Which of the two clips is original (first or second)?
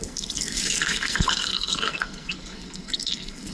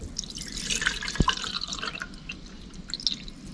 second